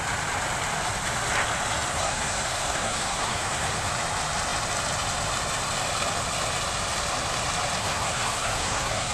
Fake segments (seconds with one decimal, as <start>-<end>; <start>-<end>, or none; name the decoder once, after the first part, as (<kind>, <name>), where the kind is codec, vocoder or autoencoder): 1.9-3.9 (codec, SNAC); 7.8-9.1